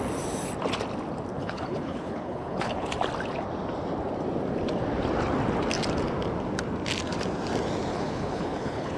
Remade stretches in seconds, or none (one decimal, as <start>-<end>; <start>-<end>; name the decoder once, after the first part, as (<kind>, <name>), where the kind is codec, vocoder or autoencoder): 1.4-2.9 (codec, HILCodec); 7.9-9.0